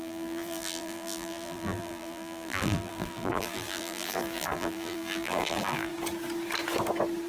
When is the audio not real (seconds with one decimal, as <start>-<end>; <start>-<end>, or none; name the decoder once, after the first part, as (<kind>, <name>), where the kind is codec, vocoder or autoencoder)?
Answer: 0.0-5.9 (vocoder, BigVGAN v2)